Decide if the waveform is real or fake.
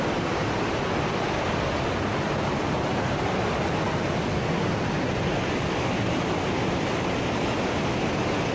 real